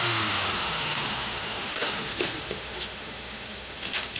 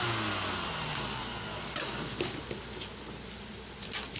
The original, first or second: second